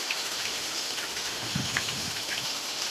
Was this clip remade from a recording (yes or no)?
yes